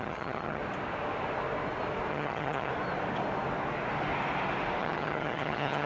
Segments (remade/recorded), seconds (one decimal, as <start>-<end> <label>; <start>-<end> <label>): 0.0-0.6 remade; 0.6-2.1 recorded; 2.1-2.7 remade; 2.7-4.8 recorded; 4.8-5.9 remade